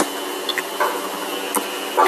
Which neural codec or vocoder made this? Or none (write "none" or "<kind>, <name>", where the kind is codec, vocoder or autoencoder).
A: none